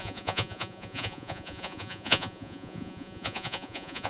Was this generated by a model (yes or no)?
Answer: yes